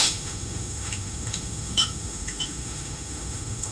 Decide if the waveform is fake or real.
fake